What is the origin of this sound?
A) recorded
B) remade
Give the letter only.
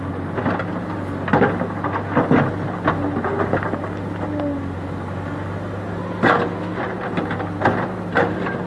A